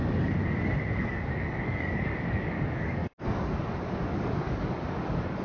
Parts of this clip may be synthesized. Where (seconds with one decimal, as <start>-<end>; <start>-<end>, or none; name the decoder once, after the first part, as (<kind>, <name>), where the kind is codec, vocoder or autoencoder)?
0.0-0.4 (codec, DAC); 1.0-5.4